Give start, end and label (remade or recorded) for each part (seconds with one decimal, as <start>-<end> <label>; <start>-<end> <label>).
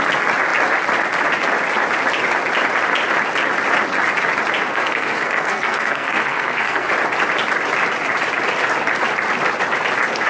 0.0-4.7 recorded; 4.7-6.9 remade; 6.9-10.3 recorded